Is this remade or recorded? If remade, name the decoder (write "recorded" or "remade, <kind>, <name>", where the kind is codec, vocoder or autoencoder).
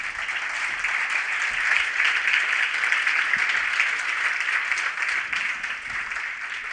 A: recorded